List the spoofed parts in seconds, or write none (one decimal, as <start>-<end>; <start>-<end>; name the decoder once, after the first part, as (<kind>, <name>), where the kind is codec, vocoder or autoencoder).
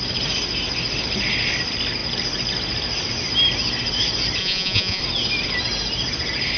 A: 4.4-5.0 (vocoder, Vocos)